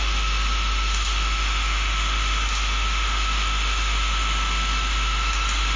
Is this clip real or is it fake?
fake